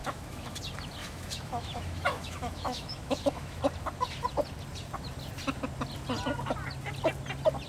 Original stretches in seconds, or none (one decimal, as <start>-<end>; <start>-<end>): 0.6-1.0; 3.6-7.7